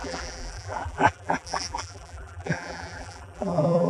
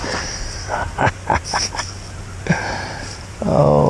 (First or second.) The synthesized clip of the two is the first